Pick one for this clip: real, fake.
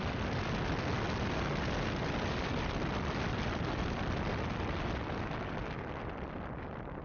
real